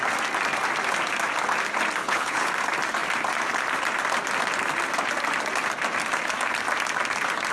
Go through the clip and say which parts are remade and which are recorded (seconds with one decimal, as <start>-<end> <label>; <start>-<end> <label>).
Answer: 0.0-2.0 recorded; 2.0-2.5 remade; 2.5-7.5 recorded